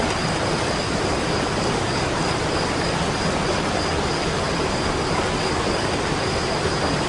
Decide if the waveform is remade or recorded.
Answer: recorded